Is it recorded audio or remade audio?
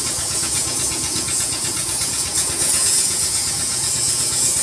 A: remade